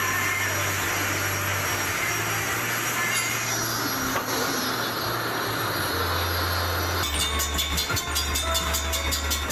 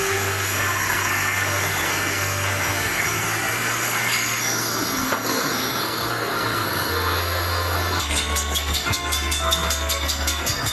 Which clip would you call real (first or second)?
first